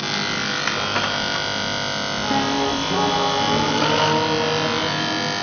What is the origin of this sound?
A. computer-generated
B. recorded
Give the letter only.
B